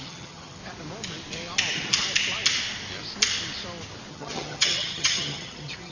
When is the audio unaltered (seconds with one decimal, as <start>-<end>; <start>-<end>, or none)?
0.6-4.1